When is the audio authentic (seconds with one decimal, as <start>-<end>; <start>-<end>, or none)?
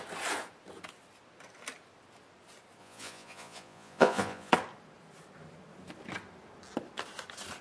0.0-2.8; 4.5-7.6